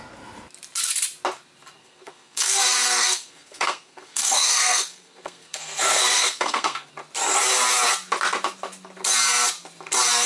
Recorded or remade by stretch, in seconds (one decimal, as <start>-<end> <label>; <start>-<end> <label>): 0.0-1.8 recorded; 1.8-6.9 remade; 6.9-10.3 recorded